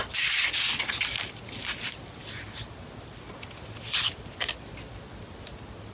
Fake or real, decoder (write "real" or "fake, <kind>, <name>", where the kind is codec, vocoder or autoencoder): real